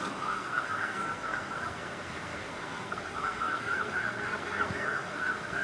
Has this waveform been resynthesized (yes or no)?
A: yes